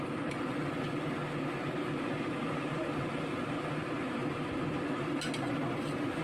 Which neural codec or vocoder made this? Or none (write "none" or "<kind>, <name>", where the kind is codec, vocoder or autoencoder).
none